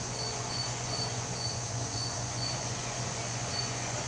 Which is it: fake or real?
fake